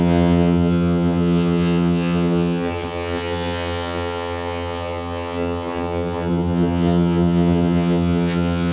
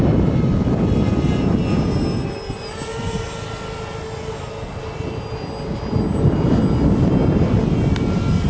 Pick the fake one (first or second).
first